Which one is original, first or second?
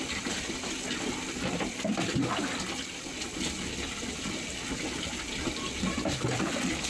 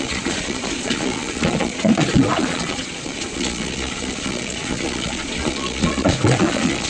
first